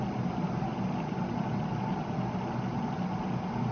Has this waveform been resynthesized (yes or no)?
no